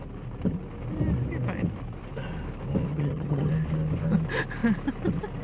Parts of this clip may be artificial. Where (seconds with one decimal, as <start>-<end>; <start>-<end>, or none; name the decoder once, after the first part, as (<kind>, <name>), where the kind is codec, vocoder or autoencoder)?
2.9-3.5 (vocoder, HiFi-GAN)